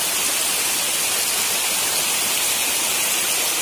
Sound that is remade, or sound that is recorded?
recorded